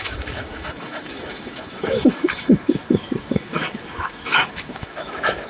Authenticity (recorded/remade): remade